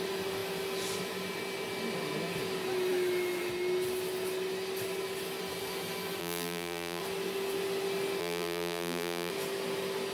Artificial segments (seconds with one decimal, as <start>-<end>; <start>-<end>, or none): 6.2-7.0; 8.2-9.3